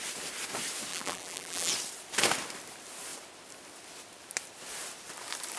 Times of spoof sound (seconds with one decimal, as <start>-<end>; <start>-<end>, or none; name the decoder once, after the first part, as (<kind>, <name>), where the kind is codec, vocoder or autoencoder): 0.9-1.7 (vocoder, BigVGAN v2)